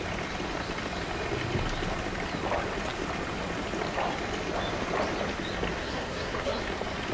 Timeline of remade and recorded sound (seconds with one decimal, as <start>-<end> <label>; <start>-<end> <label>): 0.0-5.8 recorded; 5.8-6.6 remade; 6.6-7.1 recorded